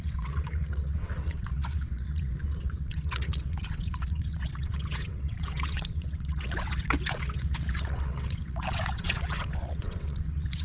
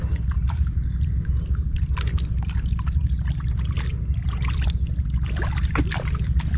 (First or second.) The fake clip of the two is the first